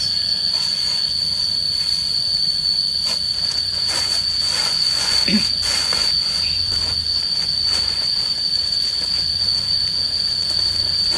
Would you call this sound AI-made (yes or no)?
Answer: yes